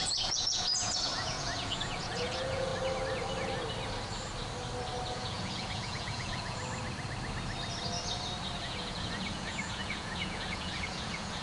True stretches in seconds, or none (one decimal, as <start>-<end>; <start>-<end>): 2.7-5.1; 6.6-8.6